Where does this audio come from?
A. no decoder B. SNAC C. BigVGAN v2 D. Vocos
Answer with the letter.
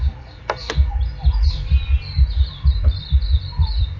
C